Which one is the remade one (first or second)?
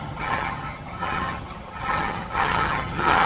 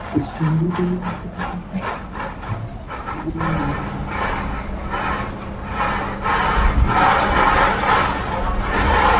first